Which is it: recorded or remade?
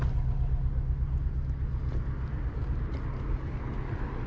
recorded